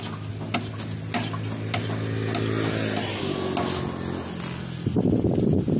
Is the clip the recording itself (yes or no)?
yes